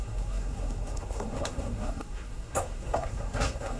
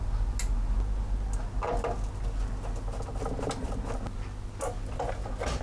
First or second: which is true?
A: second